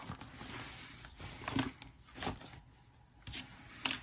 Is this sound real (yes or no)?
yes